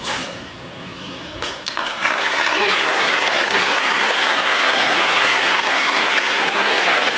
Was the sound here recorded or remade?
remade